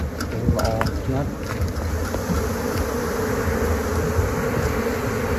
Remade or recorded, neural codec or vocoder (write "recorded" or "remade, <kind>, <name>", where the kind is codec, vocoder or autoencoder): recorded